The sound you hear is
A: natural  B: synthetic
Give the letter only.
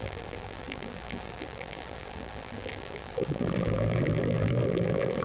B